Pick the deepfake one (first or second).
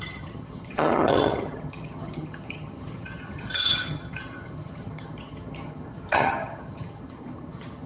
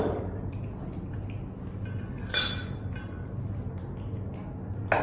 first